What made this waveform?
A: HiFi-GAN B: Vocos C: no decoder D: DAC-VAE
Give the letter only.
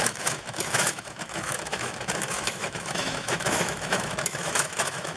D